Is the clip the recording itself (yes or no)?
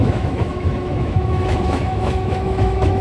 no